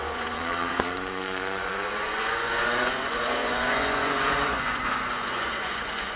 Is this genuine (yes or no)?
no